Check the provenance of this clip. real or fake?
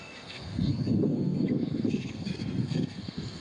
fake